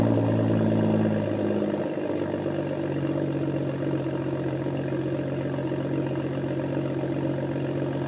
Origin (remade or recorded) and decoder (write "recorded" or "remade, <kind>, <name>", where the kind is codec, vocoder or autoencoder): recorded